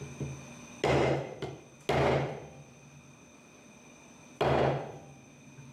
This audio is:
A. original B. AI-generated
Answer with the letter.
A